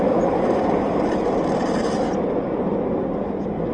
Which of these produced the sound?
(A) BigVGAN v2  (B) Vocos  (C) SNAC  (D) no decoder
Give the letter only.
D